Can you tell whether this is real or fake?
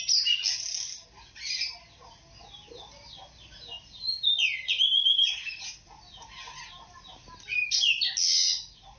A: real